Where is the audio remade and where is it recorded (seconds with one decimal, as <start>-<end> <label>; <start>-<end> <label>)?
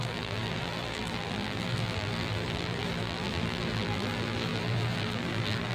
0.0-5.7 remade